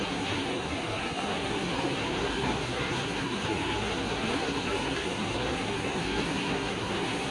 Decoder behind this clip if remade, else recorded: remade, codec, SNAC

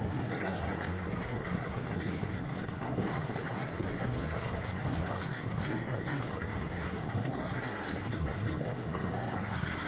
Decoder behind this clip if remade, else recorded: remade, codec, SNAC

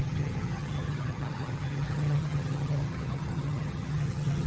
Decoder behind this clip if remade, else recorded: remade, vocoder, HiFi-GAN